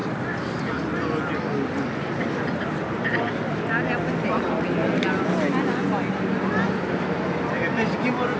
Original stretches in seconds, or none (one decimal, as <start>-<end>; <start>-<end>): 0.0-8.4